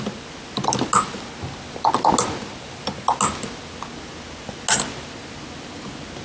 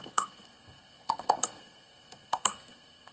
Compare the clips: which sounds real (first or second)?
first